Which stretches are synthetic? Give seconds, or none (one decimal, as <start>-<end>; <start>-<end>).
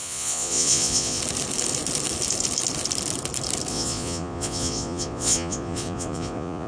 0.0-1.2; 3.7-6.7